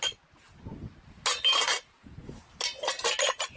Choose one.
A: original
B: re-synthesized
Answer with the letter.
A